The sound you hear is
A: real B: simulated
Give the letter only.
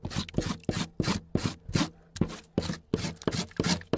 A